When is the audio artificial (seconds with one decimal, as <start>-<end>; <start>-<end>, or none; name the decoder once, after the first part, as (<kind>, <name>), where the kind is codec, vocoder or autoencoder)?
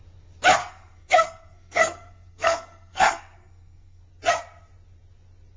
0.6-4.0 (codec, SNAC)